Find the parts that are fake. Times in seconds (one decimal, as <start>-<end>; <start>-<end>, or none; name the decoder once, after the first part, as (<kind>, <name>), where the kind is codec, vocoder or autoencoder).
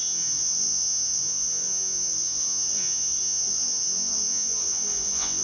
0.0-5.4 (vocoder, Vocos)